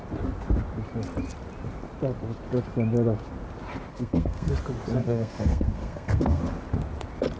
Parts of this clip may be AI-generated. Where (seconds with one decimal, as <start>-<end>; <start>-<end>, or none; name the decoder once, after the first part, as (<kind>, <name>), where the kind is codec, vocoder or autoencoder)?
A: 3.9-4.5 (codec, SNAC); 5.0-6.4